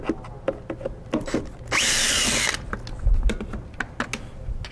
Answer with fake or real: real